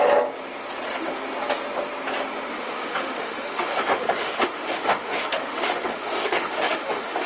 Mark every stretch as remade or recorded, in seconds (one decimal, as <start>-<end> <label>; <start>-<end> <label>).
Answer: 0.0-2.5 recorded; 2.5-7.3 remade